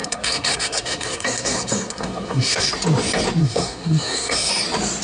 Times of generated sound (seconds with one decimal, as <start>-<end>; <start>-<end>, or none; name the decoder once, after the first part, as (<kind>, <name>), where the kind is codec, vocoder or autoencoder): 0.0-2.7 (codec, SNAC); 3.4-4.5